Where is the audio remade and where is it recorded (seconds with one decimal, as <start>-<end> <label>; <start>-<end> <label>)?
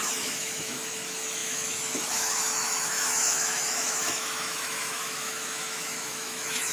0.0-6.7 remade